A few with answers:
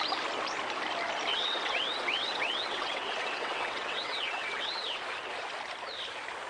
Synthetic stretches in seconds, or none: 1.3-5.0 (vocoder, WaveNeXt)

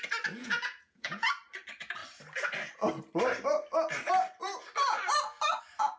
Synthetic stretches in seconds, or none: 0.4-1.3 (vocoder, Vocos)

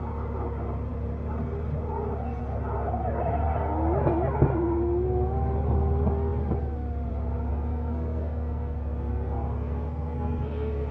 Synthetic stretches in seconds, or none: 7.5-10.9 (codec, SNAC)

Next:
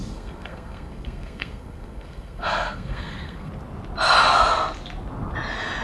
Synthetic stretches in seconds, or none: 0.0-3.5 (codec, SNAC)